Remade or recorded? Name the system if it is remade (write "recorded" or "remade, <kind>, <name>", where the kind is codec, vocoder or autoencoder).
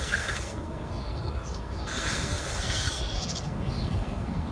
remade, codec, SNAC